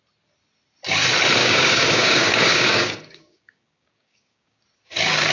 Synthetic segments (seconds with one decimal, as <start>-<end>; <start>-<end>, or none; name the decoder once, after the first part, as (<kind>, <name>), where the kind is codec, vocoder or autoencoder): 1.4-4.6 (codec, DAC)